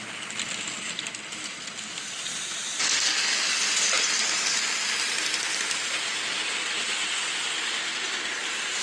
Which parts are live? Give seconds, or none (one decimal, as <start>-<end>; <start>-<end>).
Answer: 0.0-8.8